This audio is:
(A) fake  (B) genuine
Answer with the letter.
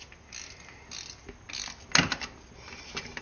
B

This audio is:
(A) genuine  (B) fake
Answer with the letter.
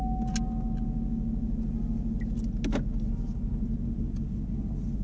A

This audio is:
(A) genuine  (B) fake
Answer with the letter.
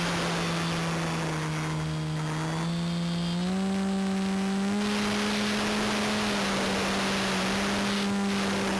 A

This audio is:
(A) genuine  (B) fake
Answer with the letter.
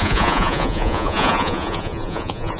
B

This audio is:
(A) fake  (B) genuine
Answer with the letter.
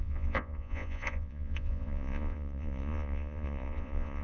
A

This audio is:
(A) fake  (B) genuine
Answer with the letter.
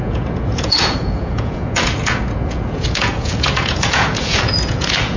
A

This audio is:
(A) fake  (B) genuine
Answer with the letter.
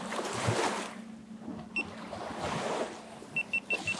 B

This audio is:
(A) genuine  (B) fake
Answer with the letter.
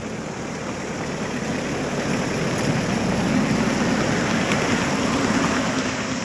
A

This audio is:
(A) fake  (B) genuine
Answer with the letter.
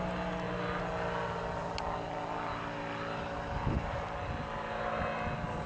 B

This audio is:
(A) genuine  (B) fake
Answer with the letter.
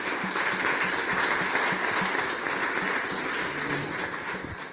A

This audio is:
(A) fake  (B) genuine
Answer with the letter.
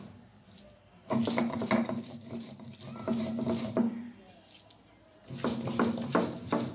B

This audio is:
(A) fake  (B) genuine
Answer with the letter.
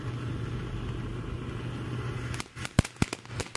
B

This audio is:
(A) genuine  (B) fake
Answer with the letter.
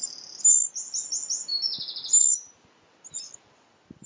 A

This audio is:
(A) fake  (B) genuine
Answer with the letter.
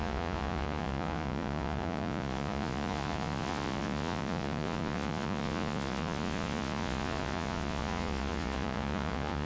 A